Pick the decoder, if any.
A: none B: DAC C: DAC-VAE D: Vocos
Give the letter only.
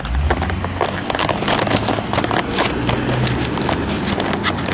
A